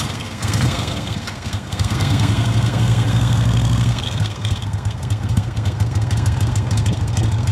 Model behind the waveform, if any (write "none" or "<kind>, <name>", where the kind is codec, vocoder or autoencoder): codec, SNAC